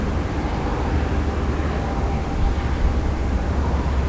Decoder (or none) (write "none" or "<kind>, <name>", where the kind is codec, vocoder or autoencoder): none